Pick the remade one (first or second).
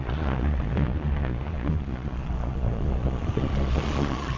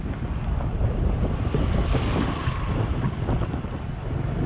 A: first